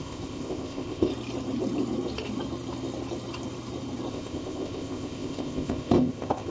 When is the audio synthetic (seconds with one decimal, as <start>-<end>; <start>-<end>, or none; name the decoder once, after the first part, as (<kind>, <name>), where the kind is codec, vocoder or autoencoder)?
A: 0.0-1.1 (codec, ZipCodec); 4.1-6.5